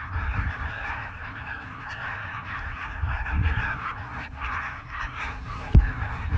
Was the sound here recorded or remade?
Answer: remade